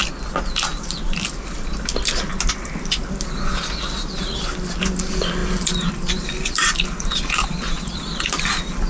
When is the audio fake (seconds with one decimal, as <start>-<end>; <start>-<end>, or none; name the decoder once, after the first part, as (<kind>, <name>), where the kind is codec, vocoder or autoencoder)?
5.0-8.9 (vocoder, BigVGAN v2)